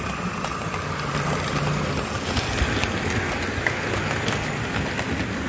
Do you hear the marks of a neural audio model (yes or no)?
no